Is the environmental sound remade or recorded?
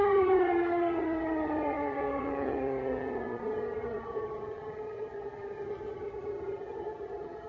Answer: remade